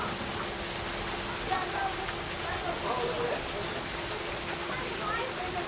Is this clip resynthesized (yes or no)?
no